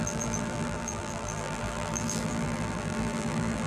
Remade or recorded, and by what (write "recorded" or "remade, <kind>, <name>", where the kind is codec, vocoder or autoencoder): remade, vocoder, BigVGAN v2